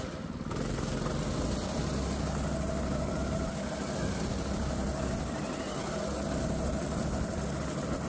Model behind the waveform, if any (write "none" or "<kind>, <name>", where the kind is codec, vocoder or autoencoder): none